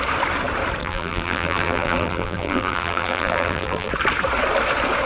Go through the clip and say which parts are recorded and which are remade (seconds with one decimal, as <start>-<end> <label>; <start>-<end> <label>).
0.0-0.8 recorded; 0.8-3.9 remade; 3.9-5.1 recorded